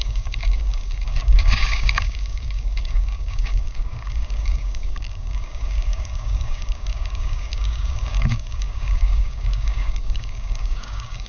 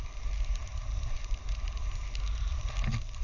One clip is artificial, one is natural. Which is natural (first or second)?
second